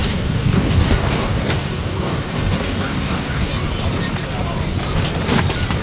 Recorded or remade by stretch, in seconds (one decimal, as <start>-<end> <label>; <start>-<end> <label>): 0.0-3.5 remade; 3.5-5.8 recorded